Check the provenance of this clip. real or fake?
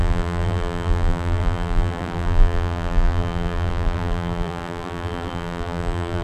fake